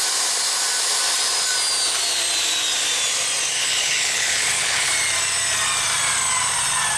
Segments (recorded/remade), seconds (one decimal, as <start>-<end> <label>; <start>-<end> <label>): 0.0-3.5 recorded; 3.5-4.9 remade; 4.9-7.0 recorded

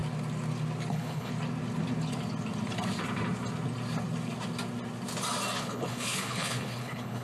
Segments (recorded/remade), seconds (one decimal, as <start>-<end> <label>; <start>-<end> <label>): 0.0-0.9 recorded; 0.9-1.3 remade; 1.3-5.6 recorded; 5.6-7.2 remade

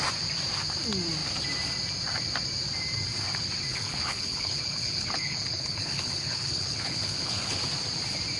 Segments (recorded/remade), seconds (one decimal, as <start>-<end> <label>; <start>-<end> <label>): 0.0-3.7 recorded; 3.7-7.6 remade; 7.6-8.4 recorded